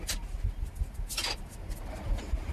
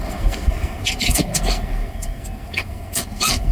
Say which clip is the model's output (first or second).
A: second